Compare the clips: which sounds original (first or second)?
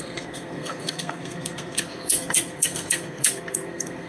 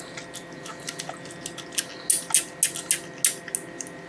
second